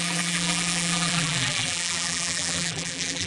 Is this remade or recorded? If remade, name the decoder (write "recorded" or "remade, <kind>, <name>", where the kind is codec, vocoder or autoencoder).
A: remade, vocoder, BigVGAN v2